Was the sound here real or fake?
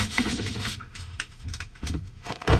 fake